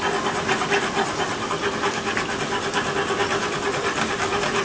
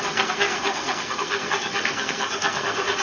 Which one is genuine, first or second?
first